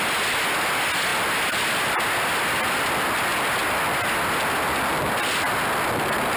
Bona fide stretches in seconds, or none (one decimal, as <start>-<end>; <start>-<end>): 0.0-6.4